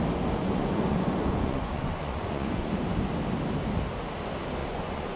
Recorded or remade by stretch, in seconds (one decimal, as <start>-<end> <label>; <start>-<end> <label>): 0.0-0.4 recorded; 0.4-2.7 remade; 2.7-4.6 recorded; 4.6-5.2 remade

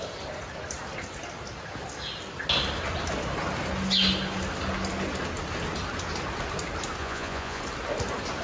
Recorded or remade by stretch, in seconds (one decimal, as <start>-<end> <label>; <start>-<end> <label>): 0.0-7.0 recorded; 7.0-7.6 remade; 7.6-8.4 recorded

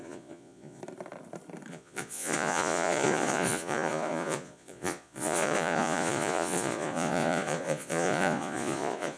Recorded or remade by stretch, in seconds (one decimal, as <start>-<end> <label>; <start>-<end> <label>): 0.0-0.8 remade; 0.8-1.7 recorded; 1.7-9.2 remade

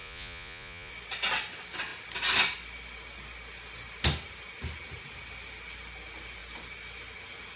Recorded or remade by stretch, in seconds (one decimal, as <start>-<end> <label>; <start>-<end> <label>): 0.0-0.9 remade; 0.9-7.6 recorded